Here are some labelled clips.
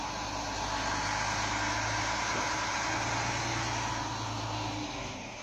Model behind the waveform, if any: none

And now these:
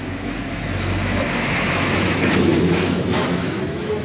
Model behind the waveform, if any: autoencoder, DAC-VAE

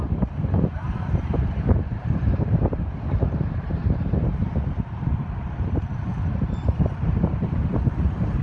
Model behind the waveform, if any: vocoder, BigVGAN v2